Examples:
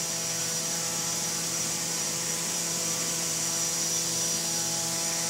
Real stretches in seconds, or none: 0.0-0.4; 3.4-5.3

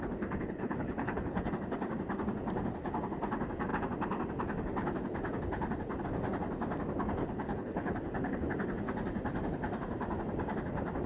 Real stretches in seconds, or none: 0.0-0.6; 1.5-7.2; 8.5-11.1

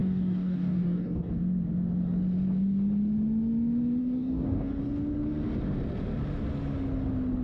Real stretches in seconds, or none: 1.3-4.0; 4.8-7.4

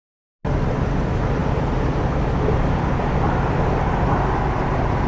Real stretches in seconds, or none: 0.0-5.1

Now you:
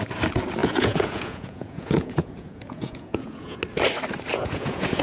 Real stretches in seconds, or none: 0.0-0.6; 3.6-4.3